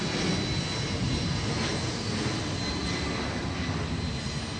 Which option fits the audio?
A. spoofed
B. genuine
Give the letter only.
B